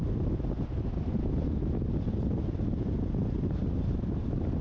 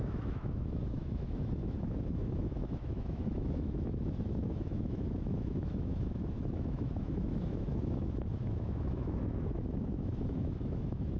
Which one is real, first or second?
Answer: first